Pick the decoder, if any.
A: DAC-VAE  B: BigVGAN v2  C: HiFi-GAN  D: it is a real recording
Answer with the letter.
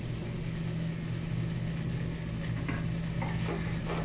D